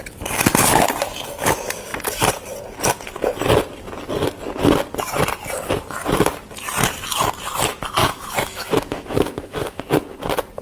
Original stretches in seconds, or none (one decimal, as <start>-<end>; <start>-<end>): 0.0-8.0; 9.8-10.6